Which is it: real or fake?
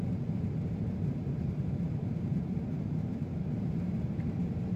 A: fake